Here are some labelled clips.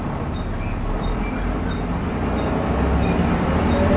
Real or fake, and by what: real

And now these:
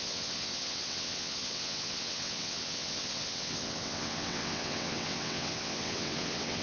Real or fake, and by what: fake, vocoder, WaveNeXt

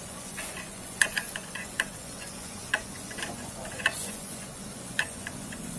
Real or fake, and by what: fake, vocoder, Vocos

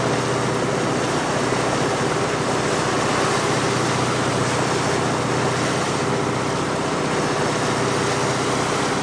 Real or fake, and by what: real